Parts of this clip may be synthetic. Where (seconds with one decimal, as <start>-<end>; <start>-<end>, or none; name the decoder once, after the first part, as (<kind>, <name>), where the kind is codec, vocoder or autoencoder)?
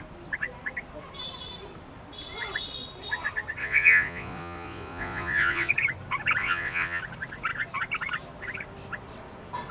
3.6-5.7 (vocoder, Vocos); 6.4-7.0